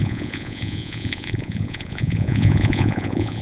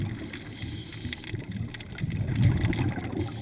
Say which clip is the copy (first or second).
first